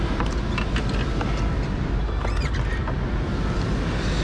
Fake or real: real